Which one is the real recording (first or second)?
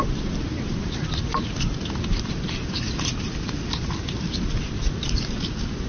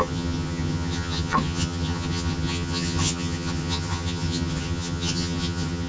first